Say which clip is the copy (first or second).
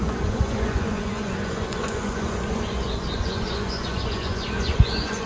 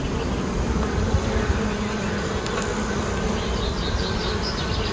first